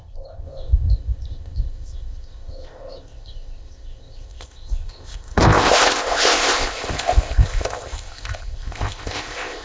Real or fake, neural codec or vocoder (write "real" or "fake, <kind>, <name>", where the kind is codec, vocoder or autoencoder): fake, codec, ZipCodec